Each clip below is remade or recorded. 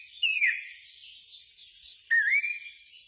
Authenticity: recorded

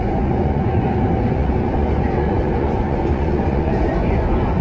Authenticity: remade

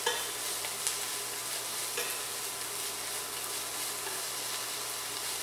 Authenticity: recorded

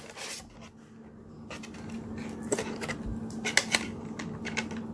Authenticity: recorded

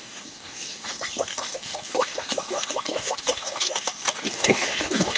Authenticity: remade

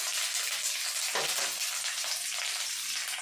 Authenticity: recorded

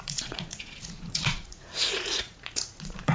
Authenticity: remade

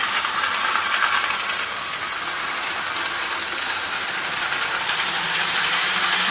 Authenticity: recorded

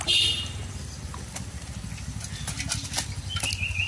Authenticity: recorded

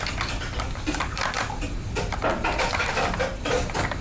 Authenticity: recorded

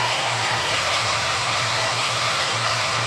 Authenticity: remade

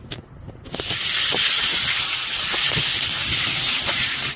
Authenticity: recorded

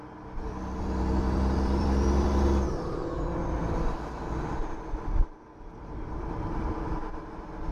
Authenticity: remade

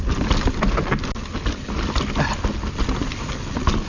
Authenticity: recorded